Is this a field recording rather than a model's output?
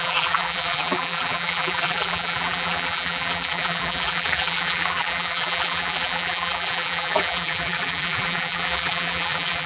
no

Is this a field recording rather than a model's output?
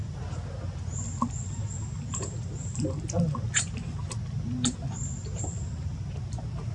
yes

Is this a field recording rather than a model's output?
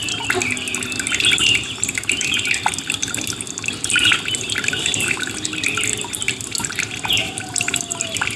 yes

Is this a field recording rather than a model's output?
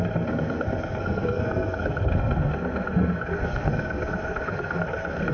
no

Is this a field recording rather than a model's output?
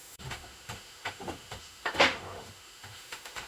no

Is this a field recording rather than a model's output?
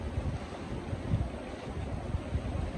yes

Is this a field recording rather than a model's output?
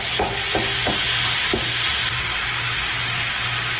yes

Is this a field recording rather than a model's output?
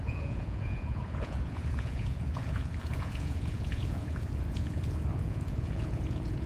no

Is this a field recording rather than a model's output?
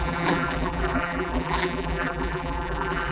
no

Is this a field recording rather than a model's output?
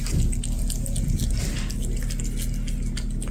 yes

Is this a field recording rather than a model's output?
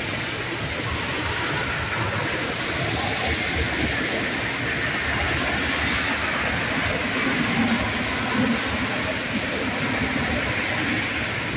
yes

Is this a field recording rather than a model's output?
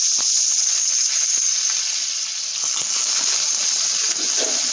yes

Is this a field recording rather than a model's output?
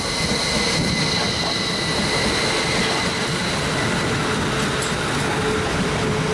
yes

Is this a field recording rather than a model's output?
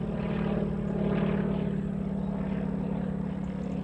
yes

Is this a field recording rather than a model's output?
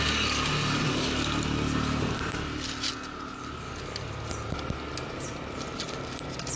yes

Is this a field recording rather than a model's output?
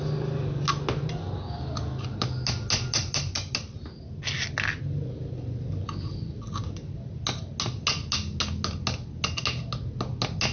yes